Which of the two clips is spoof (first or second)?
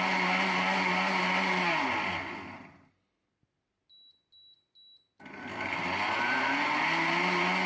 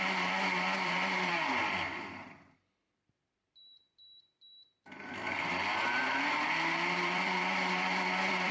second